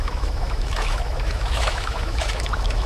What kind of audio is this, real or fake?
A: fake